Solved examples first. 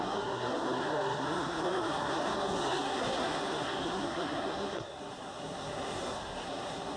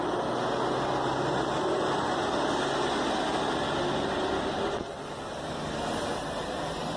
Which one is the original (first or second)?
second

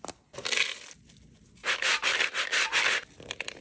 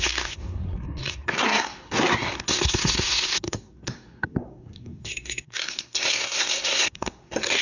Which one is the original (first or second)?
first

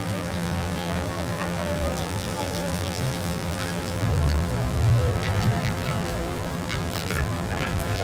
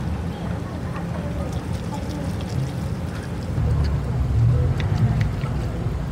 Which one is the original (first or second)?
second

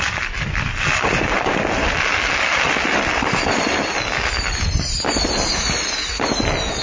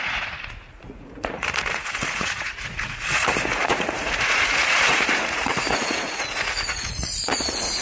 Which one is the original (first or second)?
first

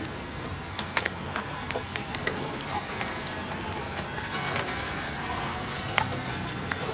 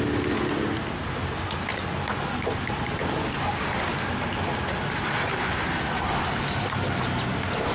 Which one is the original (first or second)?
second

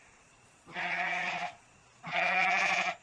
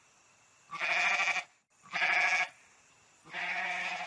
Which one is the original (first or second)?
second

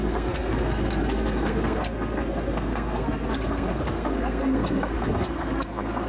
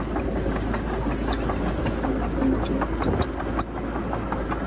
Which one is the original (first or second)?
second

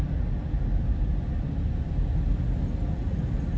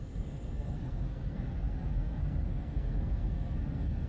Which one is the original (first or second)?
first